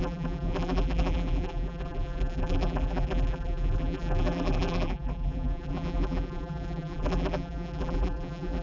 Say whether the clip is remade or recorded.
remade